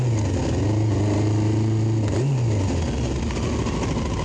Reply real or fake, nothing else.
real